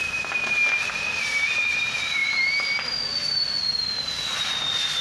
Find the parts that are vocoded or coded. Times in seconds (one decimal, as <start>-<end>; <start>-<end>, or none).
none